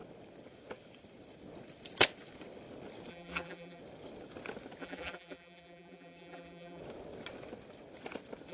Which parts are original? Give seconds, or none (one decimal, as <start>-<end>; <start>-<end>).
0.0-3.1; 3.8-4.8; 6.8-8.5